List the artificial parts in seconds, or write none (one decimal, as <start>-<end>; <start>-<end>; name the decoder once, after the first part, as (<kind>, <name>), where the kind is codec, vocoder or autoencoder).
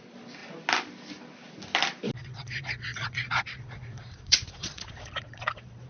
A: 2.2-5.9 (vocoder, Vocos)